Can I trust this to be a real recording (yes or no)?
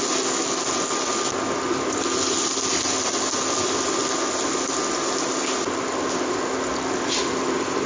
yes